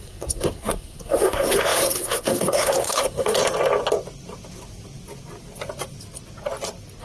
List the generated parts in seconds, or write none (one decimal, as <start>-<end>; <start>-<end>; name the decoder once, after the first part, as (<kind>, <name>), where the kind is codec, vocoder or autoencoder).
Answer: 0.0-3.4 (codec, SNAC)